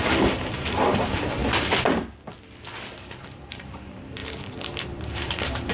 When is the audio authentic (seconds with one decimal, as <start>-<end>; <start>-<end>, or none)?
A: 1.4-2.9